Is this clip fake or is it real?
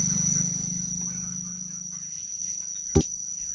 real